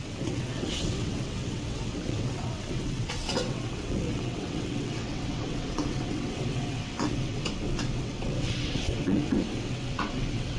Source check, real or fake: fake